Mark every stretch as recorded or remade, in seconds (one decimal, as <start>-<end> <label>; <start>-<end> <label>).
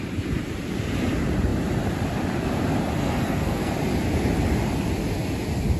0.0-3.0 recorded; 3.0-3.7 remade; 3.7-5.8 recorded